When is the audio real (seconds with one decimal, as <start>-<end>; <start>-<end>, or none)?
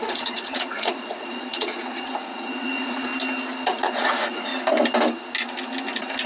3.1-3.7; 4.5-6.3